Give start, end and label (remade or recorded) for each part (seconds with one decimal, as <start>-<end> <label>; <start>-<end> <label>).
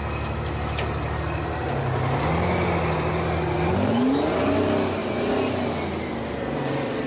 0.0-7.1 recorded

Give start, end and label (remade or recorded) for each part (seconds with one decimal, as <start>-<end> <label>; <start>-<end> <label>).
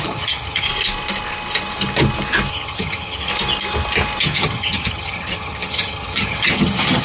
0.0-0.7 remade; 0.7-2.5 recorded; 2.5-3.3 remade; 3.3-4.2 recorded; 4.2-7.0 remade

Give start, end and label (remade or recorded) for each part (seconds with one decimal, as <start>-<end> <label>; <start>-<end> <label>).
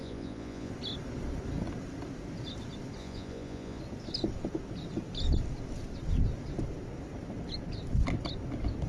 0.0-0.7 remade; 0.7-3.0 recorded; 3.0-3.8 remade; 3.8-8.9 recorded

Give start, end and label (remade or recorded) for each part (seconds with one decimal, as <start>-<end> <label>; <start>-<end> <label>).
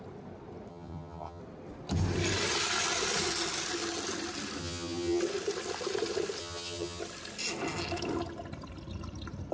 0.0-0.7 recorded; 0.7-1.4 remade; 1.4-4.6 recorded; 4.6-5.2 remade; 5.2-6.4 recorded; 6.4-7.0 remade; 7.0-9.5 recorded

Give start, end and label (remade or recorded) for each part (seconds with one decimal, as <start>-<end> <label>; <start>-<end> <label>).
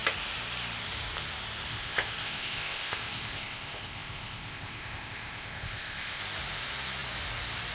0.0-1.7 recorded; 1.7-6.2 remade; 6.2-7.7 recorded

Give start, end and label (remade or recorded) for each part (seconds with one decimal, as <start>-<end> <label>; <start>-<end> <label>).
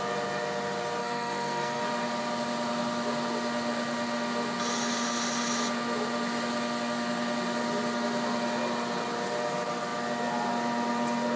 0.0-1.0 recorded; 1.0-1.8 remade; 1.8-11.4 recorded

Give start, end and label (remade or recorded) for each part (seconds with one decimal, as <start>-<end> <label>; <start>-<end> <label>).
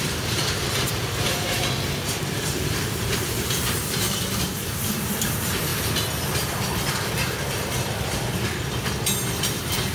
0.0-5.7 remade; 5.7-9.4 recorded; 9.4-9.9 remade